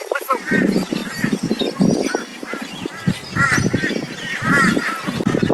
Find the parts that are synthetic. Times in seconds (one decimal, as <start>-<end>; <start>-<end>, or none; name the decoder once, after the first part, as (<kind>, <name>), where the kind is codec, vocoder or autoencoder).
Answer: 2.3-3.6 (vocoder, BigVGAN v2)